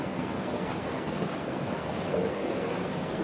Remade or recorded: remade